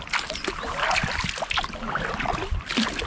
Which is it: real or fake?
real